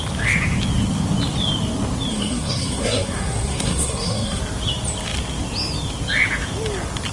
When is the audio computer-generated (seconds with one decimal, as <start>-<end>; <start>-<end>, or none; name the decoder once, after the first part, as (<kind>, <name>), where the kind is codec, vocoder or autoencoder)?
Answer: 2.1-4.4 (codec, SNAC)